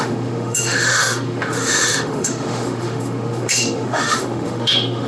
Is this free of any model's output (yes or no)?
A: no